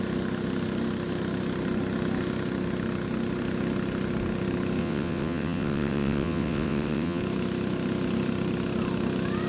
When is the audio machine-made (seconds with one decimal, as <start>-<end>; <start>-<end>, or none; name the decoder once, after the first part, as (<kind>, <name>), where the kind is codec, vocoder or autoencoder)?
4.8-7.2 (vocoder, WaveNeXt)